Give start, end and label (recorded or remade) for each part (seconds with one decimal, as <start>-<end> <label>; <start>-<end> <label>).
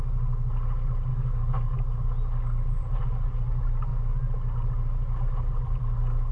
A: 0.0-1.1 recorded; 1.1-1.8 remade; 1.8-6.3 recorded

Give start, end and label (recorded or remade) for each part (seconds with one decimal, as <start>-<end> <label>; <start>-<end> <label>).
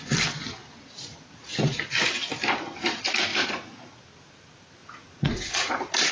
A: 0.0-3.3 recorded; 3.3-4.0 remade; 4.0-4.8 recorded; 4.8-6.1 remade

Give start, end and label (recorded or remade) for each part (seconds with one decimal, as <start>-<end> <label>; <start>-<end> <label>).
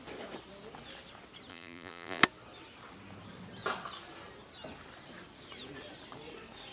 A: 0.0-1.5 recorded; 1.5-2.2 remade; 2.2-6.7 recorded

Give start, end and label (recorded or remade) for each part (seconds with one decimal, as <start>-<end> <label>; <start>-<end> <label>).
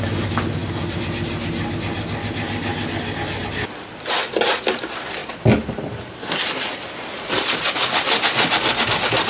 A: 0.0-0.6 recorded; 0.6-1.8 remade; 1.8-5.2 recorded; 5.2-7.7 remade; 7.7-9.3 recorded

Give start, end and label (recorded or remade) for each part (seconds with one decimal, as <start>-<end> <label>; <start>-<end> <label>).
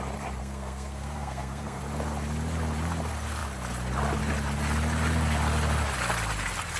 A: 0.0-0.4 recorded; 0.4-1.8 remade; 1.8-6.8 recorded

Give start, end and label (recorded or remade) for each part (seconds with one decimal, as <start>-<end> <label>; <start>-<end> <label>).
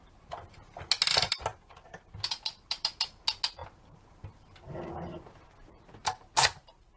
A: 0.0-7.0 recorded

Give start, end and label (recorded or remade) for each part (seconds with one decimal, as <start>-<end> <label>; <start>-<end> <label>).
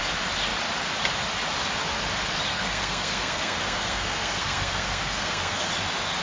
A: 0.0-2.5 recorded; 2.5-5.7 remade; 5.7-6.2 recorded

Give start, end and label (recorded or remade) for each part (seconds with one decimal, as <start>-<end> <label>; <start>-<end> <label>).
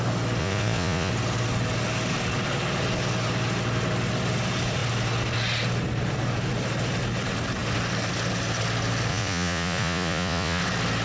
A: 0.0-0.4 recorded; 0.4-1.1 remade; 1.1-9.1 recorded; 9.1-10.6 remade; 10.6-11.0 recorded